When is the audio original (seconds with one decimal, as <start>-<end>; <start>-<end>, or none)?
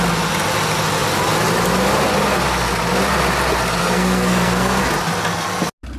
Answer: 0.0-3.8; 4.8-6.0